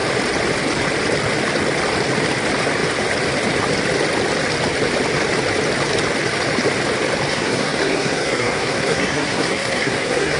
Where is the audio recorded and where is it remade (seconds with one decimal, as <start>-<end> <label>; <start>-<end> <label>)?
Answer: 0.0-7.3 recorded; 7.3-10.4 remade